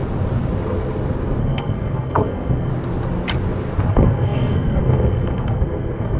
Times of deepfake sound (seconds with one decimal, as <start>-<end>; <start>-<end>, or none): 1.4-2.7; 3.9-6.2